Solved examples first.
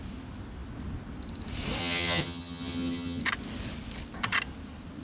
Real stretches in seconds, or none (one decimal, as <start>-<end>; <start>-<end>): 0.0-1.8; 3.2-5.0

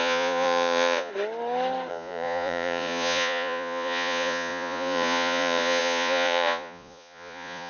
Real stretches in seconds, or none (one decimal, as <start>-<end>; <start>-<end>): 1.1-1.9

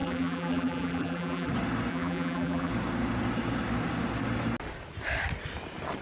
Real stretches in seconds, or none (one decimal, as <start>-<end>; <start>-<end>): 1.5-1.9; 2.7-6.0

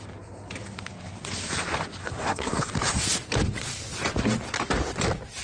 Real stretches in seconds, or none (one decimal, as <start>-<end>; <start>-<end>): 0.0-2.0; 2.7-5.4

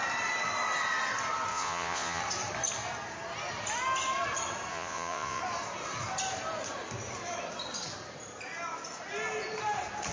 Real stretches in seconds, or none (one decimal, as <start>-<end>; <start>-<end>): 0.0-1.5; 2.2-4.7; 5.4-10.1

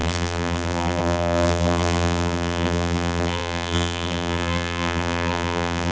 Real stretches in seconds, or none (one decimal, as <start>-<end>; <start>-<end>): none

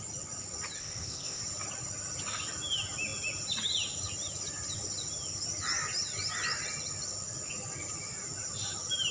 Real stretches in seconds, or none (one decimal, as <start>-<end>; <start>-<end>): 0.0-0.8; 1.4-9.1